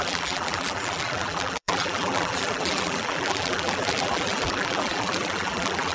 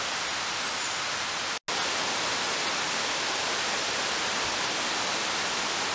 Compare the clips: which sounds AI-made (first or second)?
first